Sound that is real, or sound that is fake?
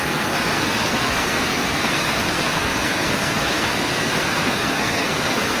fake